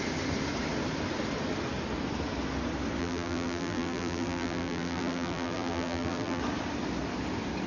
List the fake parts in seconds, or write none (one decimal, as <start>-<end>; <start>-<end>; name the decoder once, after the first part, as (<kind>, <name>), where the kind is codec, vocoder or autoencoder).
3.0-6.4 (vocoder, BigVGAN v2)